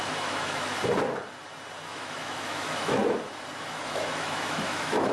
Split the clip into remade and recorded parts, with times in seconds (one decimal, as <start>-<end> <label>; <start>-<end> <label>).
0.0-0.7 remade; 0.7-1.9 recorded; 1.9-3.0 remade; 3.0-3.6 recorded; 3.6-5.1 remade

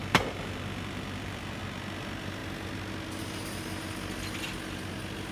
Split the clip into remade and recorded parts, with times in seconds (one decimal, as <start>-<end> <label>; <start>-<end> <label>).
0.0-5.3 recorded

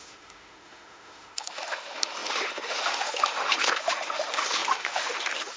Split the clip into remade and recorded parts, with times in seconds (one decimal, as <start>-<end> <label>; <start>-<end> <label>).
0.0-5.6 remade

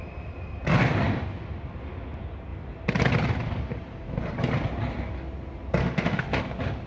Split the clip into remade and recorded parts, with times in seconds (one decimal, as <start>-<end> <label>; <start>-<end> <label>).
0.0-5.8 recorded; 5.8-6.4 remade; 6.4-6.9 recorded

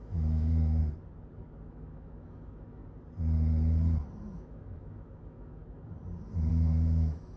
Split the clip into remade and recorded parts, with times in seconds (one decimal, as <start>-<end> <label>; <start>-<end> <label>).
0.0-0.8 remade; 0.8-1.7 recorded; 1.7-2.8 remade; 2.8-4.4 recorded; 4.4-5.6 remade; 5.6-6.5 recorded; 6.5-7.4 remade

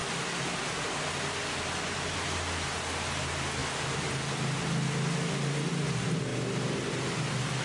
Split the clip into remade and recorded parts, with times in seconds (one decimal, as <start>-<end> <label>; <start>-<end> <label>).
0.0-7.6 recorded

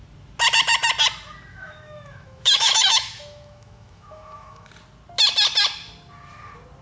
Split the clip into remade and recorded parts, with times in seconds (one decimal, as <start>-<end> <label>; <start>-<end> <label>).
0.0-1.5 recorded; 1.5-4.7 remade; 4.7-6.8 recorded